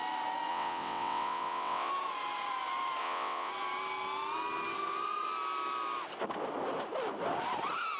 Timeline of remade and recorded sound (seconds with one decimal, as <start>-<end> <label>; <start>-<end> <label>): 0.0-0.5 recorded; 0.5-1.9 remade; 1.9-3.0 recorded; 3.0-3.5 remade; 3.5-8.0 recorded